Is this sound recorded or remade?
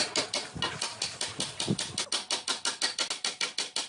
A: recorded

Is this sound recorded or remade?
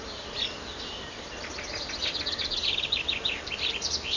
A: recorded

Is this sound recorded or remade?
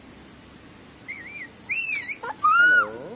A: recorded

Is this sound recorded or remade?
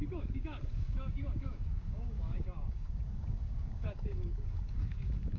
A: remade